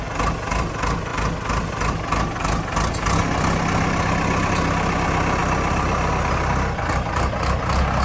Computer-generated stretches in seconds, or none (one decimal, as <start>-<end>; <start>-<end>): none